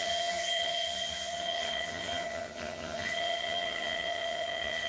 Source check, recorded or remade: remade